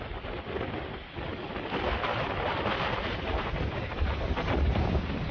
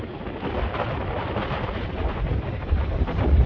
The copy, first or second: first